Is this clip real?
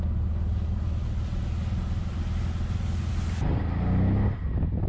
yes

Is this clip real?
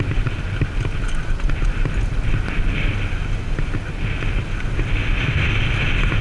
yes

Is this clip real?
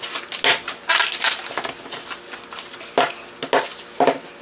yes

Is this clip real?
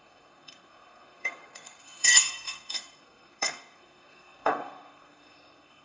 no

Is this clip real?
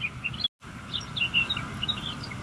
yes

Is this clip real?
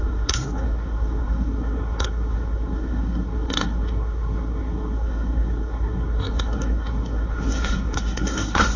no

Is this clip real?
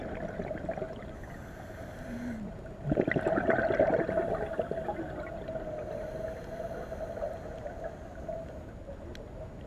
yes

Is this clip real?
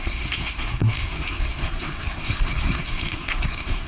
no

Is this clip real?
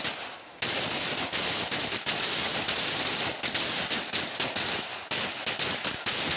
yes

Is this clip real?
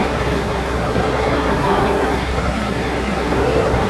no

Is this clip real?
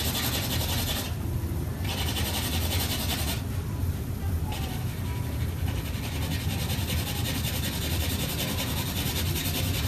yes